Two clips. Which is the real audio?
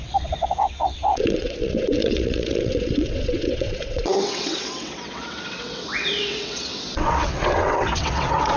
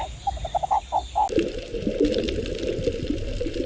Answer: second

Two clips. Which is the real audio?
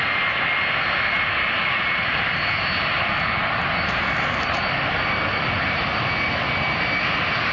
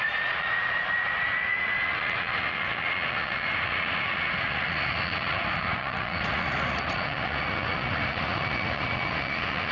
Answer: first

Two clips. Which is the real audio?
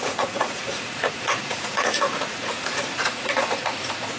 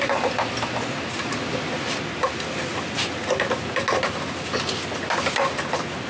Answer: second